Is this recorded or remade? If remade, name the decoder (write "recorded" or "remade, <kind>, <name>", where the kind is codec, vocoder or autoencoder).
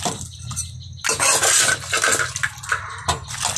recorded